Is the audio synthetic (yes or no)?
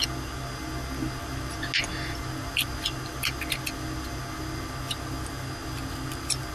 no